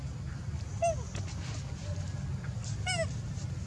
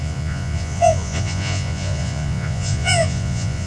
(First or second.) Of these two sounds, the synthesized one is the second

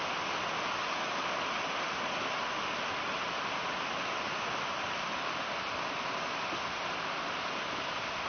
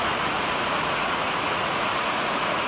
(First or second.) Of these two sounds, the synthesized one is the second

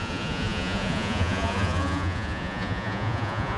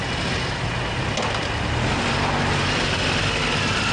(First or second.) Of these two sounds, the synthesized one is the first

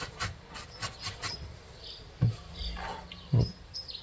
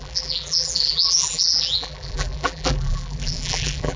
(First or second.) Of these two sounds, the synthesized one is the second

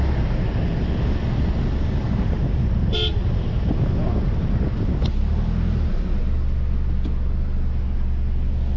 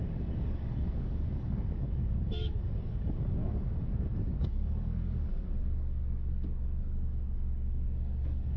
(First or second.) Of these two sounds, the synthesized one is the second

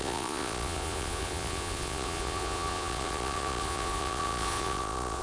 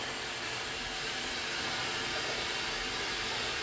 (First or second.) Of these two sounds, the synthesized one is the first